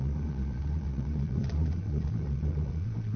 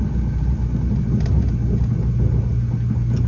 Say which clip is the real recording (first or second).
second